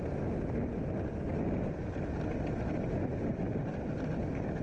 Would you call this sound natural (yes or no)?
yes